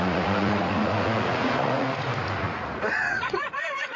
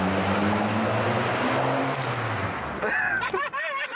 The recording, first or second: second